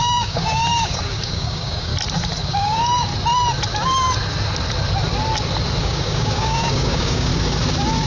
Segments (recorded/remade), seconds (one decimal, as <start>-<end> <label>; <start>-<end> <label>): 0.0-1.9 remade; 1.9-2.5 recorded; 2.5-3.1 remade; 3.1-5.8 recorded; 5.8-7.3 remade; 7.3-8.1 recorded